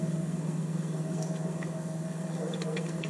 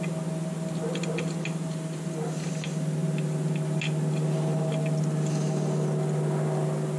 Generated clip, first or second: first